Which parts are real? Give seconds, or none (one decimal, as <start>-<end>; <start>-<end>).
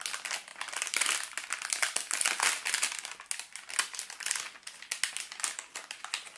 0.0-6.4